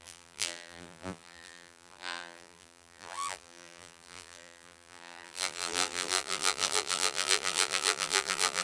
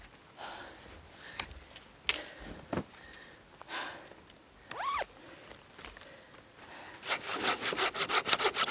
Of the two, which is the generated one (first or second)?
first